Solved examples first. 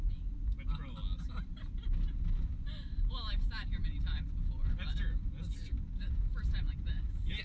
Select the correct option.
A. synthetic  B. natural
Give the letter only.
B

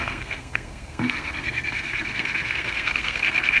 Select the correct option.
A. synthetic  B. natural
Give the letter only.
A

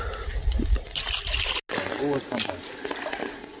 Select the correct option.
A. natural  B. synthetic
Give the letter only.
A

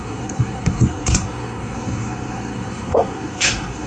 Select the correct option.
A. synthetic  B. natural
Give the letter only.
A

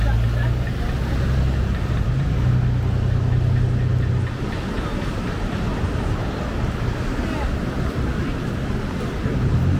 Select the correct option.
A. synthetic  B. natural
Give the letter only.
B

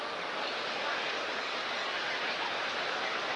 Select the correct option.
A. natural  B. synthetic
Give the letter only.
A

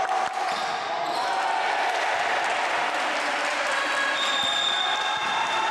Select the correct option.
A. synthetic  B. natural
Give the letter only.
B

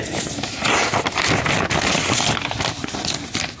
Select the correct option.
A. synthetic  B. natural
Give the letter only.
B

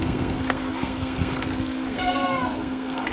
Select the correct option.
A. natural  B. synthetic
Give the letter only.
B